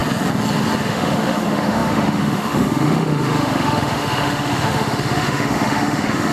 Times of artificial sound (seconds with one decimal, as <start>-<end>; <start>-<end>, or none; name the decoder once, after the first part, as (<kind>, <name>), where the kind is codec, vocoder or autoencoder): 0.8-6.3 (autoencoder, DAC-VAE)